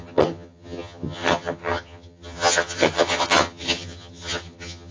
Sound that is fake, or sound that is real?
fake